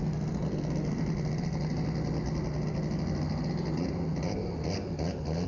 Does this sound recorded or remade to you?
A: recorded